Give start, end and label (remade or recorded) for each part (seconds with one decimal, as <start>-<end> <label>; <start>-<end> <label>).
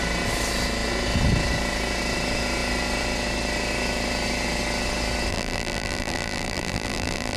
0.0-5.3 recorded; 5.3-7.4 remade